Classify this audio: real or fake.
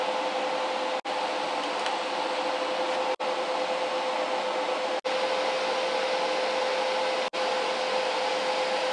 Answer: real